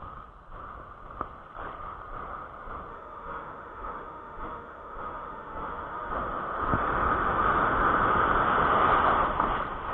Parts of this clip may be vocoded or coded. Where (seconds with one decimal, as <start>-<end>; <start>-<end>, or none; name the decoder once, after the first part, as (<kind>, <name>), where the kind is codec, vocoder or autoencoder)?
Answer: 2.9-6.1 (autoencoder, DAC-VAE)